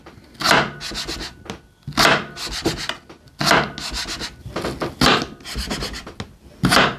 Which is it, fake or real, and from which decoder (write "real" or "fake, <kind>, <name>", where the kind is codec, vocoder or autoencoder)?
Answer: real